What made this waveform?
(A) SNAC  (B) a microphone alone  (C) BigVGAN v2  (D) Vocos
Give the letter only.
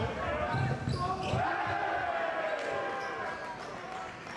B